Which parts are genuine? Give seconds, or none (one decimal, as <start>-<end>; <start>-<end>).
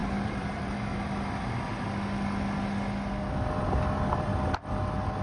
0.9-5.2